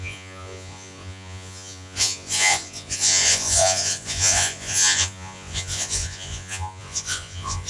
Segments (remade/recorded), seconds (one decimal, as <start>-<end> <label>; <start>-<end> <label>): 0.0-7.7 remade